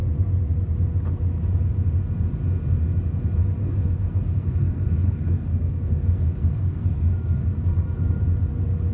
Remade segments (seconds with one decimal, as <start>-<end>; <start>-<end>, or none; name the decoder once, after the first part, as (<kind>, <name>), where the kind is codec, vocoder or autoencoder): 3.6-8.2 (codec, SNAC)